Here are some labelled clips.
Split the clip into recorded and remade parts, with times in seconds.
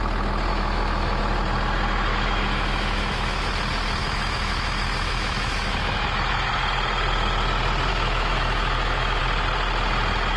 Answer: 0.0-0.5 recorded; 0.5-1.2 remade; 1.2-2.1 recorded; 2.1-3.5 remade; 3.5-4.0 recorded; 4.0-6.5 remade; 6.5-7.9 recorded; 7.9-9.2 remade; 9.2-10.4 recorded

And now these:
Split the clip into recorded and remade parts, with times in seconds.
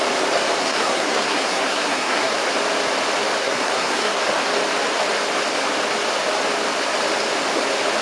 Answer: 0.0-0.6 recorded; 0.6-2.3 remade; 2.3-3.4 recorded; 3.4-4.2 remade; 4.2-8.0 recorded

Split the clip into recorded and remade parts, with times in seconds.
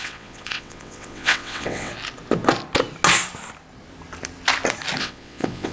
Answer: 0.0-1.9 remade; 1.9-5.0 recorded; 5.0-5.7 remade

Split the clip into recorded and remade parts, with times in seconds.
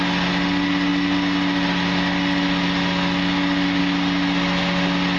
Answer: 0.0-5.2 recorded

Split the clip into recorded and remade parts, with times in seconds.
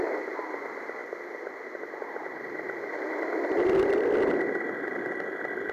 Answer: 0.0-5.7 recorded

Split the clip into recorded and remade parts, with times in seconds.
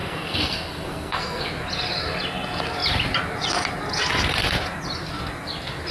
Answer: 0.0-1.5 remade; 1.5-5.9 recorded